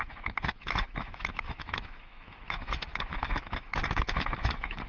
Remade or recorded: remade